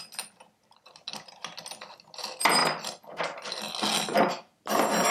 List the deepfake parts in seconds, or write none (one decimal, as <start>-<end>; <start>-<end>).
none